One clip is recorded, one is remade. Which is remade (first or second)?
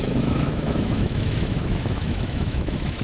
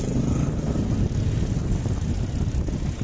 first